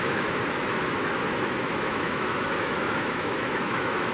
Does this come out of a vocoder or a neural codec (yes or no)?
yes